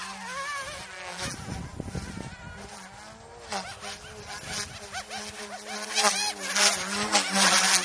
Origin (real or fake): real